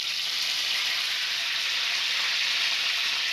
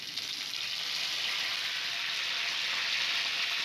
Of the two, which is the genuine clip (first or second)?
second